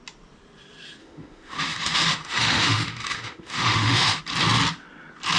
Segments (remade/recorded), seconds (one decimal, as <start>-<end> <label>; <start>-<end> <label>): 0.0-1.0 recorded; 1.0-4.2 remade; 4.2-5.4 recorded